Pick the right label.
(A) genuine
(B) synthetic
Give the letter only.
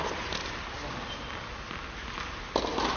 A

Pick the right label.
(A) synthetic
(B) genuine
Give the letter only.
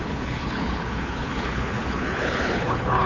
A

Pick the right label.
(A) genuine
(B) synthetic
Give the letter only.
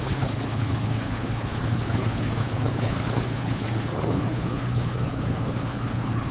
B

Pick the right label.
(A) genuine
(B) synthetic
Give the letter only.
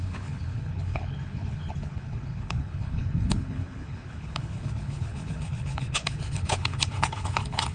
B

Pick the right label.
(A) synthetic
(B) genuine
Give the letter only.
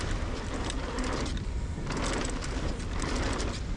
B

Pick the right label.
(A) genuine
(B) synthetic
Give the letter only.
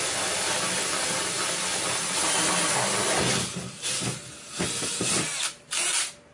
A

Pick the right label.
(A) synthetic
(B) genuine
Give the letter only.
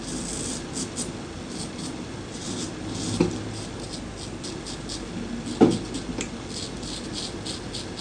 B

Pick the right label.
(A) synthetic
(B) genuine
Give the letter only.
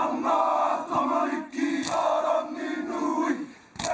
B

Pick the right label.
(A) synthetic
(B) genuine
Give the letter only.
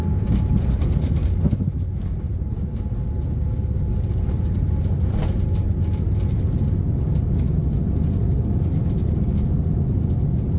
B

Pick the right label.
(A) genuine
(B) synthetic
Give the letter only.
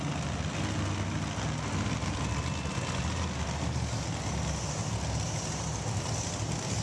A